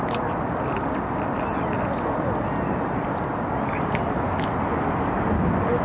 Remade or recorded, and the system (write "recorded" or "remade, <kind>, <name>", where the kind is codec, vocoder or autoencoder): recorded